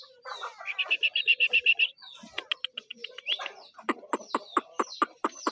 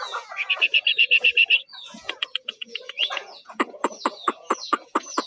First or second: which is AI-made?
second